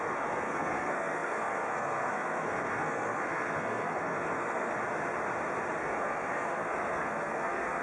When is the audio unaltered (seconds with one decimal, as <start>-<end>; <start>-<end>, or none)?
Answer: 4.7-5.8